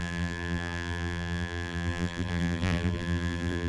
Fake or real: fake